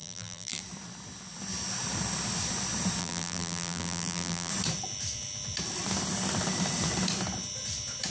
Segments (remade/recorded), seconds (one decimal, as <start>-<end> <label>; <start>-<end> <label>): 0.0-0.6 remade; 0.6-3.0 recorded; 3.0-4.5 remade; 4.5-8.1 recorded